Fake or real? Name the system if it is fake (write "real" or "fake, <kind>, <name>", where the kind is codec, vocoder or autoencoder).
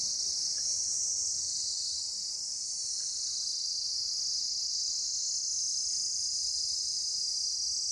real